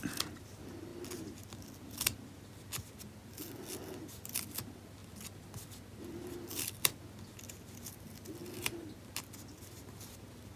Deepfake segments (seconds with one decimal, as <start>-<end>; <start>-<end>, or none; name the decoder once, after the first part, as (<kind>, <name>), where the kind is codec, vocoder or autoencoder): 8.4-9.1 (vocoder, BigVGAN v2)